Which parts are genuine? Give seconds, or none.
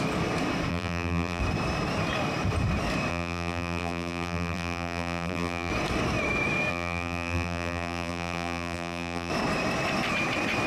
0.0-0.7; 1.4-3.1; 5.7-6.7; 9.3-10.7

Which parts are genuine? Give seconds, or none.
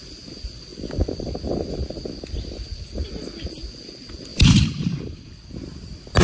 0.0-4.3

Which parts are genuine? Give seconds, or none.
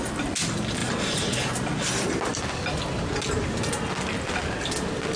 0.0-0.8; 1.4-5.2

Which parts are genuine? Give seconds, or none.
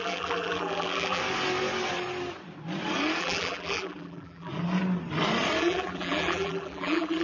1.2-3.2; 4.5-5.6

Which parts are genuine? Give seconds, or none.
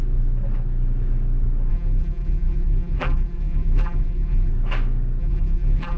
0.0-1.7; 4.5-5.2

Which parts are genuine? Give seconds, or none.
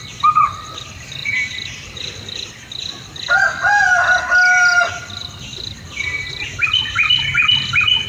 0.0-1.2; 2.1-8.1